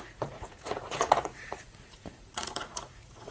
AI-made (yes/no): yes